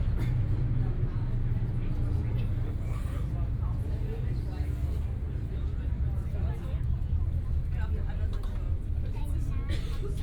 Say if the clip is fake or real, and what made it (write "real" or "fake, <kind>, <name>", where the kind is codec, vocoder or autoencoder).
real